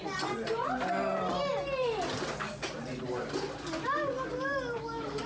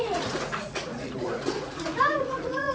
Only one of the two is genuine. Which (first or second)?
first